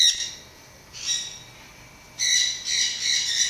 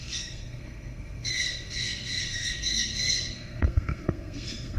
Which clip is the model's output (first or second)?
second